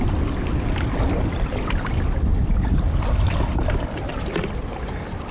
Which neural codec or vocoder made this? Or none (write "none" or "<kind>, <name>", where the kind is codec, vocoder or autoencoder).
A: vocoder, BigVGAN v2